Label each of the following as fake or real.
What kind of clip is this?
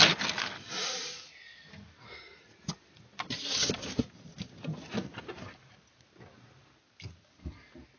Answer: real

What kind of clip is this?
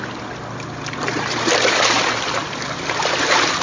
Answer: real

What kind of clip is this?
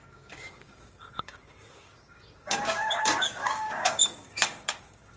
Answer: fake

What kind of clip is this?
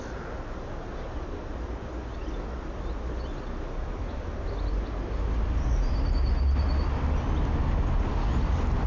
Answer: real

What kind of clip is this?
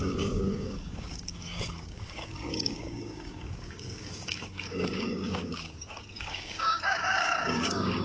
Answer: fake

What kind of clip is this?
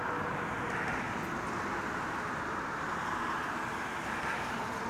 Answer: real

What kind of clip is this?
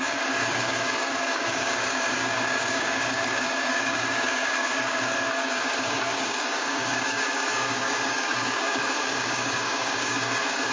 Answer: fake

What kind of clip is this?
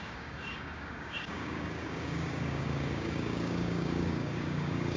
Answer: fake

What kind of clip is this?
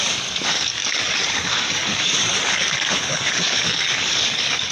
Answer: fake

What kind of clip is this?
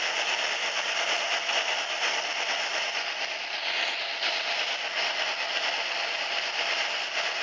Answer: real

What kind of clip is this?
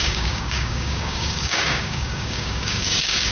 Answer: fake